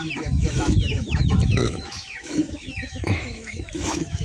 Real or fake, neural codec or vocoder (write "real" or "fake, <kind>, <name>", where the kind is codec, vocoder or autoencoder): fake, autoencoder, DAC-VAE